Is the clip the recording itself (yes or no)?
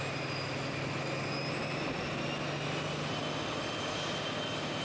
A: yes